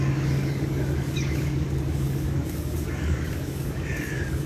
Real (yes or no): no